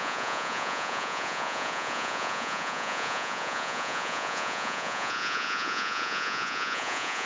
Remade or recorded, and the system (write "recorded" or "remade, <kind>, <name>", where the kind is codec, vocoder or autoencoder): remade, vocoder, Vocos